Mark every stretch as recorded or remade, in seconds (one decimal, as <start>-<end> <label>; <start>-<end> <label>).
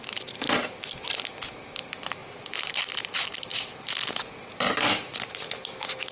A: 0.0-6.1 recorded